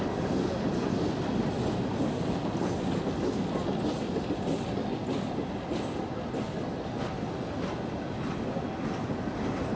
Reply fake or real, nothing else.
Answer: real